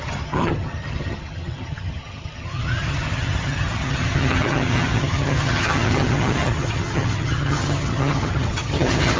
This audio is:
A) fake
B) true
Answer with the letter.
A